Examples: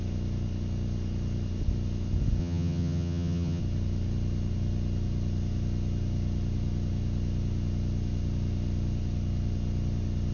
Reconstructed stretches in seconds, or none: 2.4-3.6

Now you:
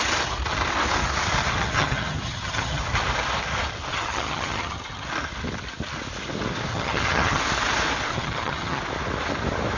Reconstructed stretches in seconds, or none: 1.6-2.8; 3.9-5.1; 6.7-7.4; 8.1-8.8